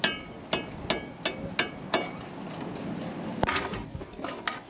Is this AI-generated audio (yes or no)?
no